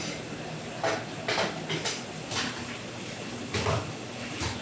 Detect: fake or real real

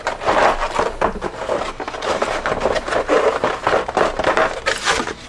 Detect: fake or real real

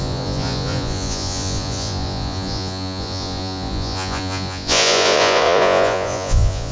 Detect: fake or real fake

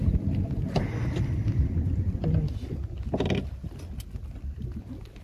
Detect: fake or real real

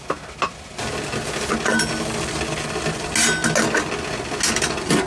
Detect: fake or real real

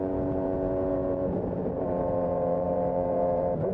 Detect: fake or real fake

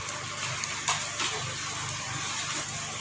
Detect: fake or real real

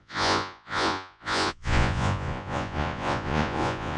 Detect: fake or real fake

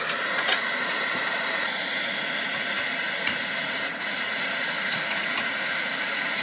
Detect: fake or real fake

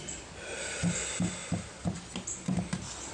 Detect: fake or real real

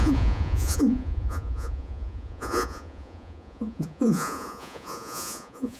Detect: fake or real fake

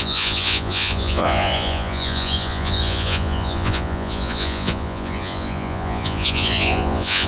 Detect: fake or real fake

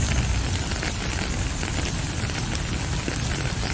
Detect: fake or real real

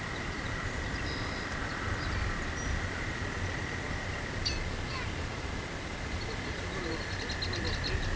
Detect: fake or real real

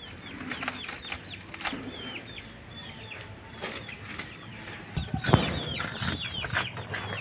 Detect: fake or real real